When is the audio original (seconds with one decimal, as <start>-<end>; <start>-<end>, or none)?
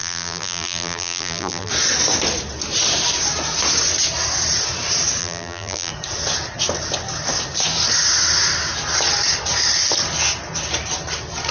1.7-5.2; 5.9-11.5